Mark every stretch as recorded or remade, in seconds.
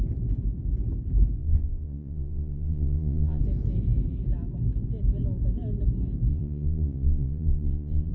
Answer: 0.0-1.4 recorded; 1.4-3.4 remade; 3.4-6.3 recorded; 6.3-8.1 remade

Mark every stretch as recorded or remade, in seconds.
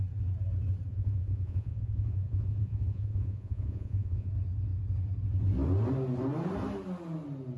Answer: 0.0-0.9 recorded; 0.9-4.3 remade; 4.3-7.6 recorded